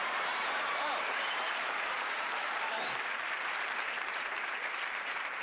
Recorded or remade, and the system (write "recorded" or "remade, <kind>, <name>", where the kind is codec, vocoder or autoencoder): remade, vocoder, BigVGAN v2